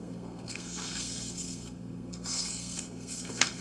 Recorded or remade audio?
remade